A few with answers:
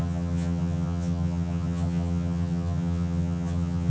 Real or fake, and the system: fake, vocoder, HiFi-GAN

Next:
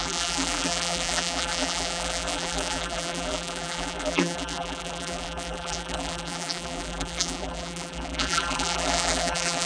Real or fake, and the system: fake, vocoder, BigVGAN v2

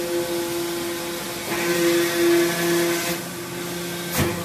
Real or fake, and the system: real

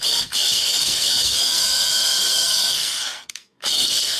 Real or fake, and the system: fake, codec, SNAC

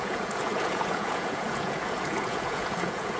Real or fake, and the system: fake, vocoder, Vocos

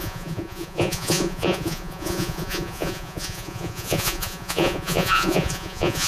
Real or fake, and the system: fake, vocoder, Vocos